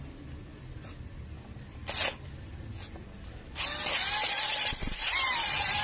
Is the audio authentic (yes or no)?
yes